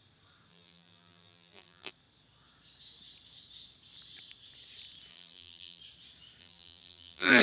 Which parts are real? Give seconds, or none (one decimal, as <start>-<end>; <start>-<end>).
0.0-0.5; 1.9-5.1; 5.8-6.4